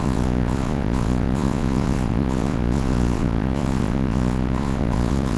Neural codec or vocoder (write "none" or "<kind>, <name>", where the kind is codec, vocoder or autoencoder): vocoder, Vocos